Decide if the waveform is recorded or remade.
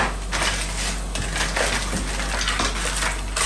recorded